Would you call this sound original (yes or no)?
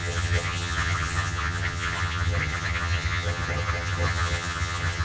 no